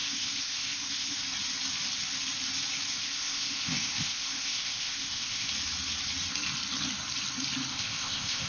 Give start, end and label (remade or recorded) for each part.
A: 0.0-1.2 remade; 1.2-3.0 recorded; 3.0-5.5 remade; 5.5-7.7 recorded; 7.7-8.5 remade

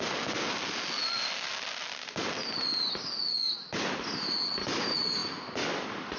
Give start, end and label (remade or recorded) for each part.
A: 0.0-6.2 recorded

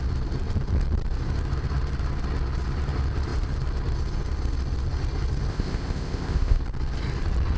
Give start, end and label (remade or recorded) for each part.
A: 0.0-5.5 recorded; 5.5-6.6 remade; 6.6-7.6 recorded

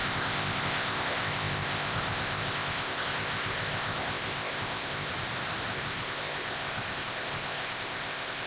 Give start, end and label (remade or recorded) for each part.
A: 0.0-5.1 remade; 5.1-5.7 recorded; 5.7-8.5 remade

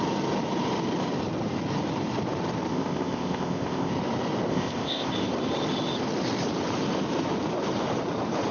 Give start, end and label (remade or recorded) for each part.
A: 0.0-2.7 recorded; 2.7-3.9 remade; 3.9-4.5 recorded; 4.5-5.1 remade; 5.1-8.5 recorded

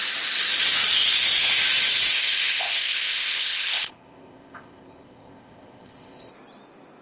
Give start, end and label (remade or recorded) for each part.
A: 0.0-2.1 recorded; 2.1-6.3 remade; 6.3-7.0 recorded